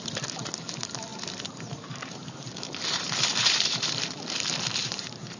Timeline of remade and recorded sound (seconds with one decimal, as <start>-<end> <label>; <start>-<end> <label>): 0.0-1.1 recorded; 1.1-4.3 remade; 4.3-4.8 recorded; 4.8-5.4 remade